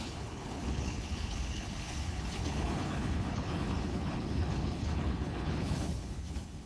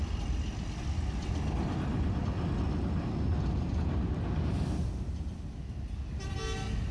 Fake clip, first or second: first